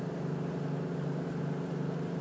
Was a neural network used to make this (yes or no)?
no